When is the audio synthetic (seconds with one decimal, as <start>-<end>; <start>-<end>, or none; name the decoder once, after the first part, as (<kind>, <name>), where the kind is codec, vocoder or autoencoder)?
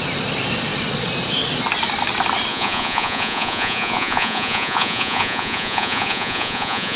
2.5-7.0 (vocoder, Vocos)